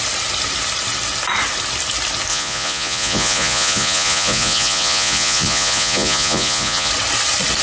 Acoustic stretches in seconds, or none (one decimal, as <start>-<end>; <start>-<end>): 0.0-2.3; 6.9-7.6